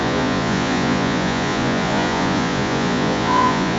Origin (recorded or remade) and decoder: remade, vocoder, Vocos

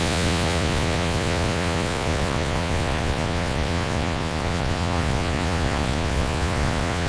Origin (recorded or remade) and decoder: remade, vocoder, Vocos